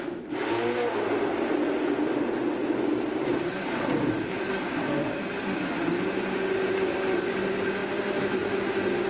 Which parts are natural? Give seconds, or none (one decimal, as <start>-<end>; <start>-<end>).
0.0-2.6; 4.5-5.0; 5.9-9.1